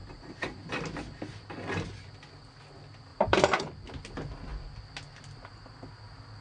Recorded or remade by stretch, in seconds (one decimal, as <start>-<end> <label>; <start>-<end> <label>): 0.0-0.7 remade; 0.7-3.1 recorded; 3.1-3.6 remade; 3.6-6.4 recorded